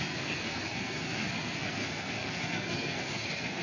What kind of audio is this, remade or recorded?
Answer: remade